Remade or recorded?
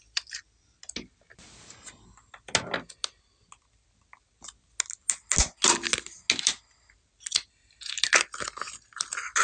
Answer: recorded